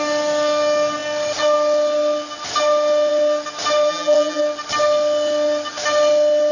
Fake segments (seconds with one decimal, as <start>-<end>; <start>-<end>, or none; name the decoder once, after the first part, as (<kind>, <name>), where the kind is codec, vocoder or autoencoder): 3.9-4.4 (vocoder, BigVGAN v2)